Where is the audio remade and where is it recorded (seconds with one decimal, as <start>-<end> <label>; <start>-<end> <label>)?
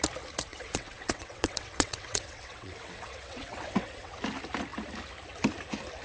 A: 0.0-0.5 recorded; 0.5-4.1 remade; 4.1-6.0 recorded